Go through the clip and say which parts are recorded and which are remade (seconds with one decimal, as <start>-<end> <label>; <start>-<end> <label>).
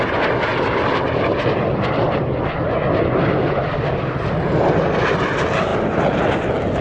0.0-6.8 recorded